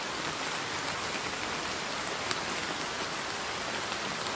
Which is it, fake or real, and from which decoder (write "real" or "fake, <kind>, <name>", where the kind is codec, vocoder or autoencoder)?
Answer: real